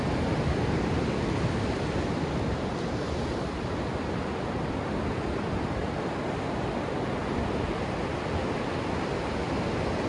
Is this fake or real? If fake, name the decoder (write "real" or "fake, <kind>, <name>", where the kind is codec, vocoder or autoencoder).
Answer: real